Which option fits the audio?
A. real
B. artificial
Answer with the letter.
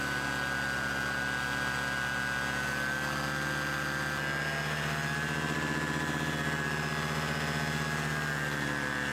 A